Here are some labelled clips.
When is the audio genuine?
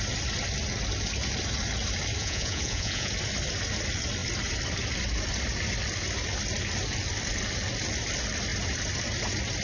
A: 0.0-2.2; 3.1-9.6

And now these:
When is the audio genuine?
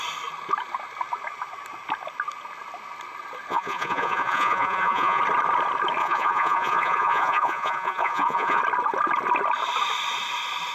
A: 0.0-3.5; 5.2-6.0; 8.6-10.7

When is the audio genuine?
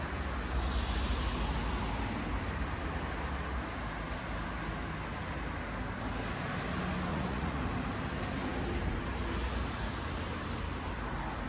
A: 0.0-7.1; 7.6-11.5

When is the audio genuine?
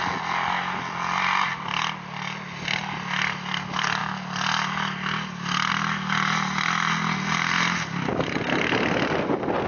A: 0.0-9.7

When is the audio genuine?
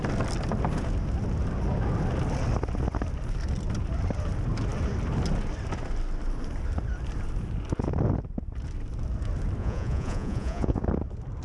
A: 0.0-9.6; 10.8-11.4